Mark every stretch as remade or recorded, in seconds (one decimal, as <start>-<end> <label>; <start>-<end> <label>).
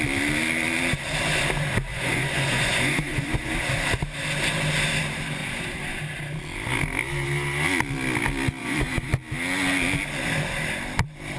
0.0-1.9 recorded; 1.9-3.5 remade; 3.5-5.4 recorded; 5.4-6.0 remade; 6.0-8.6 recorded; 8.6-9.1 remade; 9.1-11.4 recorded